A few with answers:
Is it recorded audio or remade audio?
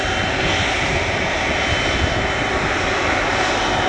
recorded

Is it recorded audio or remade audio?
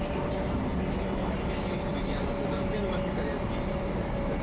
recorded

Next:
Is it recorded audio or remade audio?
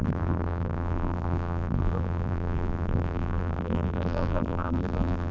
remade